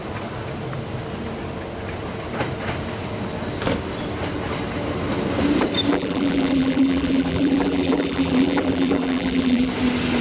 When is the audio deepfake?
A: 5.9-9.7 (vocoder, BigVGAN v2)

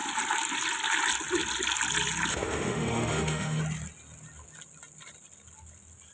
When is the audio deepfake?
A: 2.3-3.6 (autoencoder, DAC-VAE)

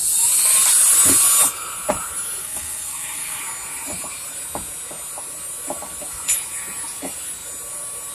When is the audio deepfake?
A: 2.4-3.4 (codec, SNAC)

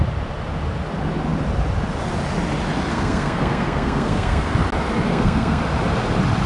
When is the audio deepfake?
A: 2.9-4.5 (codec, SNAC); 5.1-5.6

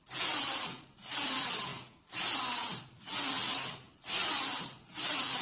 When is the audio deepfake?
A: none

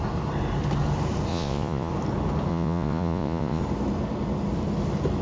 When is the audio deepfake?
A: 1.3-1.9 (vocoder, Vocos); 2.5-3.6

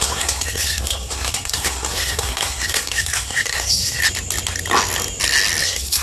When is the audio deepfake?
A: 0.0-4.0 (codec, SNAC); 5.6-6.0

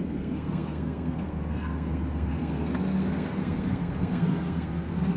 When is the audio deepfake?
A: 0.0-5.2 (codec, SNAC)